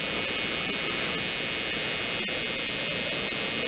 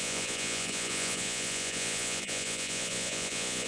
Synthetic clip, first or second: second